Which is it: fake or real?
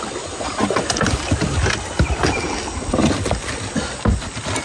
real